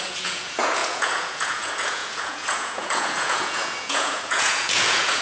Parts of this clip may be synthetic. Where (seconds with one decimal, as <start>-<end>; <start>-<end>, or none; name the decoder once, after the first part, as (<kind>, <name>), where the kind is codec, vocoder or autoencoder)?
0.0-5.2 (vocoder, Vocos)